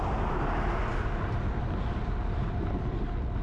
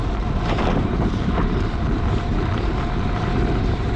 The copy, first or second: second